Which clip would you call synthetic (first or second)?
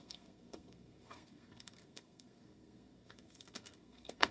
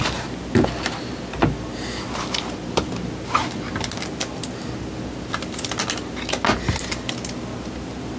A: first